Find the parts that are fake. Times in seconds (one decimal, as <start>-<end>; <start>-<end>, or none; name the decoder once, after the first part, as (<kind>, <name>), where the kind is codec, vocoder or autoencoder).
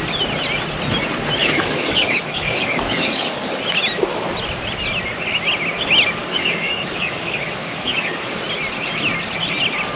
1.4-3.6 (codec, DAC); 6.2-8.3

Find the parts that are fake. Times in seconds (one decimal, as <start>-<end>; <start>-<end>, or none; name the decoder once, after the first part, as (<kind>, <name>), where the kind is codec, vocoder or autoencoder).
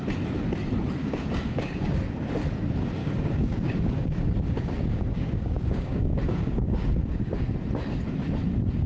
1.0-2.0 (codec, DAC); 3.0-7.4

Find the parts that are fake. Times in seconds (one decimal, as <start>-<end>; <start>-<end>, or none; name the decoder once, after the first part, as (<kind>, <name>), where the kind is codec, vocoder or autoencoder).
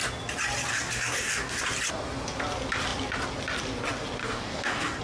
0.7-1.6 (codec, DAC); 4.2-5.0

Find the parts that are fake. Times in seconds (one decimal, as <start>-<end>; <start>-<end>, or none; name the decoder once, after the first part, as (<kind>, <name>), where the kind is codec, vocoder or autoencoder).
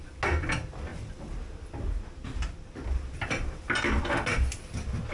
none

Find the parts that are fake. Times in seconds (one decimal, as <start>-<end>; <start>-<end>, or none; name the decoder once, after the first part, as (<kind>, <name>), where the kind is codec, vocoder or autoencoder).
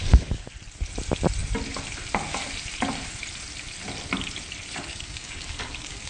0.0-0.5 (codec, DAC); 4.9-6.1